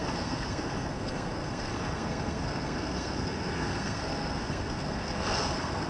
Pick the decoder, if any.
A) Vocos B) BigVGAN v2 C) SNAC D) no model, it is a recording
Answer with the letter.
C